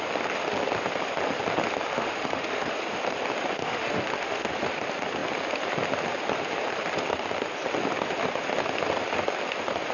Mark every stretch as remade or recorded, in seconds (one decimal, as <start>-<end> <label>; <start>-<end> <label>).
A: 0.0-1.9 recorded; 1.9-2.7 remade; 2.7-3.6 recorded; 3.6-4.5 remade; 4.5-9.9 recorded